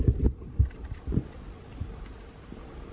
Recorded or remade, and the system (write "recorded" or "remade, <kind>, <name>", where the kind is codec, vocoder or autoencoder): recorded